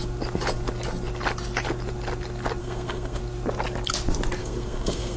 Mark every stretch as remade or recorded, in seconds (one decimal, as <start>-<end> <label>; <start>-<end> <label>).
0.0-2.6 recorded; 2.6-3.2 remade; 3.2-4.4 recorded; 4.4-5.2 remade